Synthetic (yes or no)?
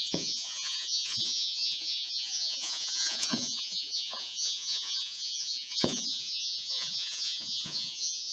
yes